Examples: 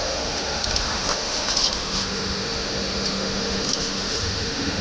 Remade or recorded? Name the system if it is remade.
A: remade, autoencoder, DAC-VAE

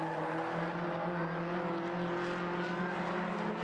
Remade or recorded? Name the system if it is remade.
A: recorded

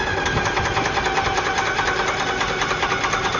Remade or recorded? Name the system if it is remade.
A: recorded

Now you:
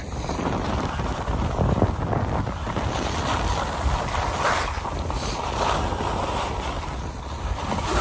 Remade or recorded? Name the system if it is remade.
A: recorded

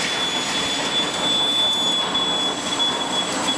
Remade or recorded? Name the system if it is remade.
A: recorded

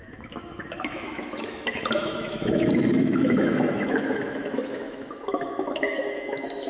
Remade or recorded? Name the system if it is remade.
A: remade, autoencoder, DAC-VAE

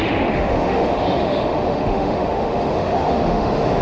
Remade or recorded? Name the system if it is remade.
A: remade, autoencoder, DAC-VAE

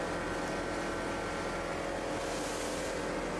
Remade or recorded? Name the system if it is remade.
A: recorded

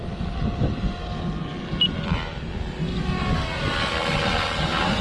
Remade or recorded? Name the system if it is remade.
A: recorded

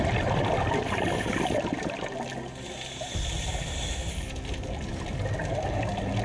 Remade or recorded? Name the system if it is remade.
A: recorded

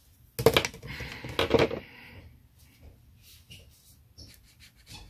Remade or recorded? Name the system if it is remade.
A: recorded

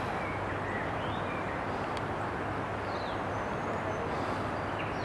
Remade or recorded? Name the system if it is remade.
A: recorded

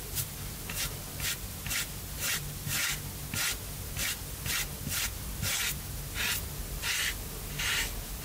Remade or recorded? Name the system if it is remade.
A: recorded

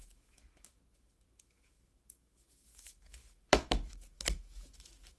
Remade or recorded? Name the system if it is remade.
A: remade, autoencoder, DAC-VAE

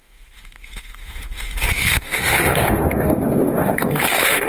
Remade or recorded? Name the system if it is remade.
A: remade, autoencoder, DAC-VAE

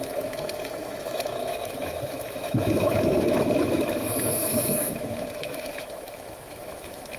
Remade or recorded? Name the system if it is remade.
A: remade, autoencoder, DAC-VAE